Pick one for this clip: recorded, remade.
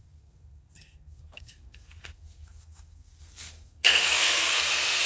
remade